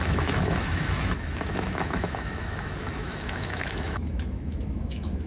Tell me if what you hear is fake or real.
fake